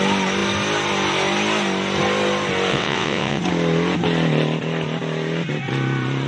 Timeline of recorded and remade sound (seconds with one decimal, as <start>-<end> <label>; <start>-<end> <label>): 0.0-2.7 recorded; 2.7-3.4 remade; 3.4-6.3 recorded